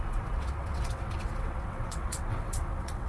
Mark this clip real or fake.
fake